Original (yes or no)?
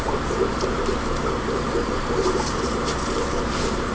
no